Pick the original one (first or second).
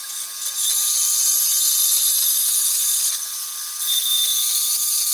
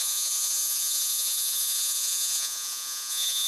first